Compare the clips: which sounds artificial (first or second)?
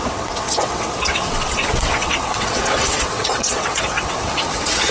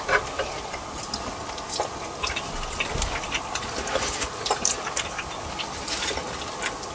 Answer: first